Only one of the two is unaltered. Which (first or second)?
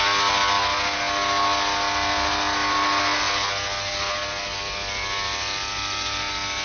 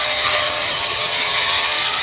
first